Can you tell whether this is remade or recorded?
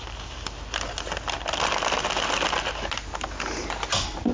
recorded